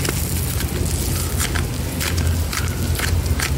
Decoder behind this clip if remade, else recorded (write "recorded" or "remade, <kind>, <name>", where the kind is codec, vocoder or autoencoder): recorded